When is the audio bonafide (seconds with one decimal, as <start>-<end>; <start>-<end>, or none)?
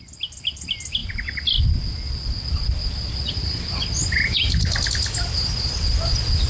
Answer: 0.0-6.5